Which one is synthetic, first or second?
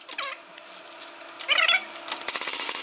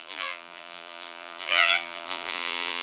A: second